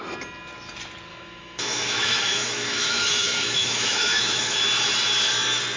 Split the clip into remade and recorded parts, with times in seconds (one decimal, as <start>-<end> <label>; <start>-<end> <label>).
0.0-1.1 recorded; 1.1-4.6 remade; 4.6-5.8 recorded